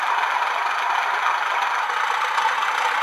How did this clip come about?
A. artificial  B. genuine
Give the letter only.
B